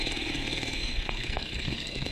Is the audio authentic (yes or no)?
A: no